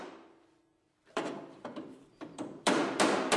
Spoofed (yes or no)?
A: yes